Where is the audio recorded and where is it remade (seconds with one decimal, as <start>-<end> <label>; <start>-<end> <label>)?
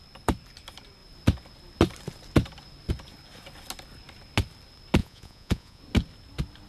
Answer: 0.0-5.0 recorded; 5.0-5.8 remade; 5.8-6.7 recorded